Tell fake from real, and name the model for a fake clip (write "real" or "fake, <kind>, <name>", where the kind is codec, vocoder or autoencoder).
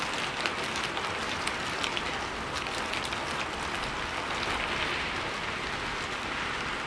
real